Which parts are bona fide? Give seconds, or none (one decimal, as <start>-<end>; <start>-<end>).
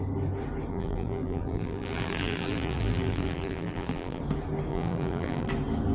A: 0.0-0.7; 4.2-4.7; 5.5-5.9